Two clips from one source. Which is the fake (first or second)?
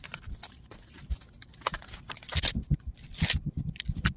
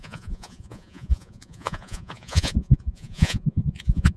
second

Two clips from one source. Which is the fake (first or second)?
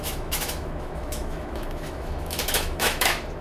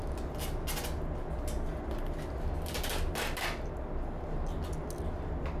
first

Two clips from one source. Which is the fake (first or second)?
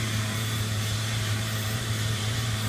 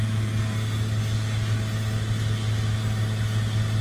first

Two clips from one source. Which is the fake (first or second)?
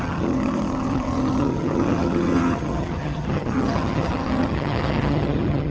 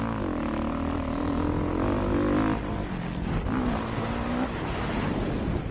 first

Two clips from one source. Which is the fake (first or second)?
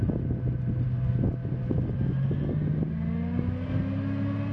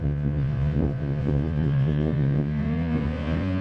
second